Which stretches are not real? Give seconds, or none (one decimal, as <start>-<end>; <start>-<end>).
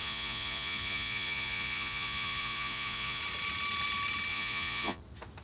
0.0-3.2; 4.3-5.0